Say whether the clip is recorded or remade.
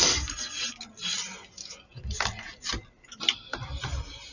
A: recorded